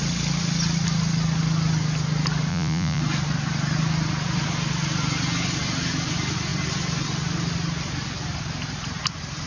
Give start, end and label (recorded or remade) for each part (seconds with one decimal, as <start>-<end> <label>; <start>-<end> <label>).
0.0-2.5 recorded; 2.5-3.0 remade; 3.0-9.5 recorded